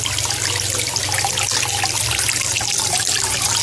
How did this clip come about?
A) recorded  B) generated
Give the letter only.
A